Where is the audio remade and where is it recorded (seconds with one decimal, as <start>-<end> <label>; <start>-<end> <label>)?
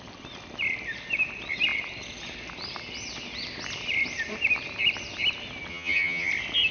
0.0-5.7 recorded; 5.7-6.3 remade; 6.3-6.7 recorded